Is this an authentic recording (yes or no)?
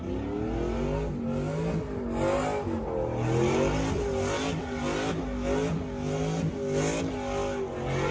yes